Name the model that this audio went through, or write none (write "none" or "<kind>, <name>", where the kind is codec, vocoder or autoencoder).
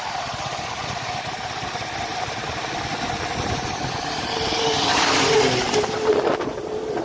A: none